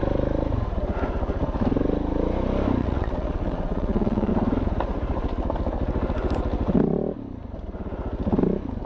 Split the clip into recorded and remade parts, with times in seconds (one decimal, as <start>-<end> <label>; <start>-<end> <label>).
0.0-2.8 recorded; 2.8-4.3 remade; 4.3-8.9 recorded